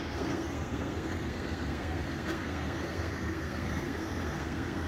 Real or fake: fake